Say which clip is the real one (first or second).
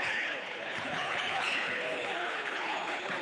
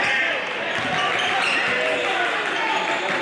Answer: second